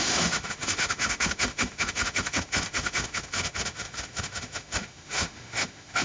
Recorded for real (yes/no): no